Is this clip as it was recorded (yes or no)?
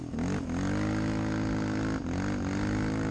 yes